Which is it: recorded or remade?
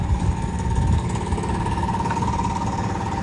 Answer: remade